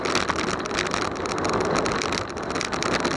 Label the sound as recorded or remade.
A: recorded